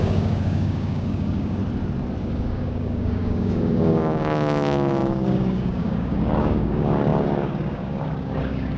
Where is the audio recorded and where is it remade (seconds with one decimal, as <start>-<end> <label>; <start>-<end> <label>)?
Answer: 0.0-1.6 remade; 1.6-2.2 recorded; 2.2-8.8 remade